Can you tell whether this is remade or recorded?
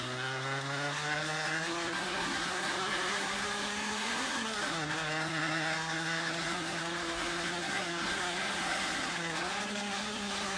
remade